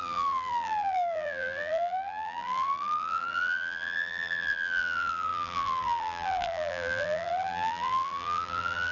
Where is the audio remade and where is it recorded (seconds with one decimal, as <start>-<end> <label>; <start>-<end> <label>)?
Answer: 0.0-8.9 remade